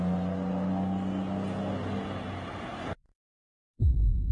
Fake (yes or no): no